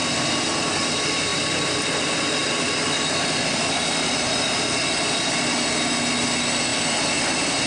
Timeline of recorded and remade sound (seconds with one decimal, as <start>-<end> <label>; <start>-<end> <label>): 0.0-0.6 remade; 0.6-1.3 recorded; 1.3-1.9 remade; 1.9-2.4 recorded; 2.4-4.8 remade; 4.8-6.7 recorded; 6.7-7.7 remade